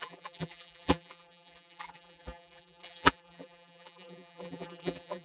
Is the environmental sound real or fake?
fake